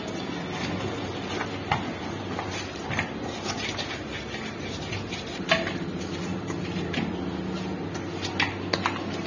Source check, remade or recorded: recorded